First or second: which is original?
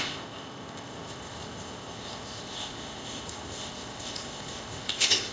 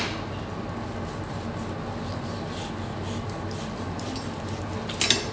second